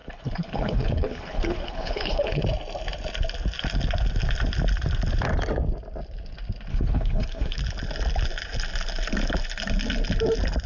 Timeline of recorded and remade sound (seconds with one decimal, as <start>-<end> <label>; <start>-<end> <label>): 0.0-2.4 remade; 2.4-6.7 recorded; 6.7-7.6 remade; 7.6-10.7 recorded